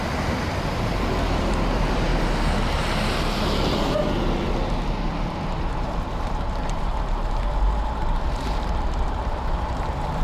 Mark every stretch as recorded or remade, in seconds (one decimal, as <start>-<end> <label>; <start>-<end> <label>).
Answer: 0.0-2.1 remade; 2.1-5.3 recorded; 5.3-10.2 remade